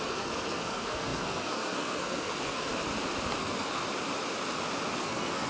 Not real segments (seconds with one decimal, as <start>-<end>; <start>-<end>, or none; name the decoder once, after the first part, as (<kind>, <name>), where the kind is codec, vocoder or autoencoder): 0.0-2.7 (codec, SNAC); 3.4-3.8; 5.0-5.5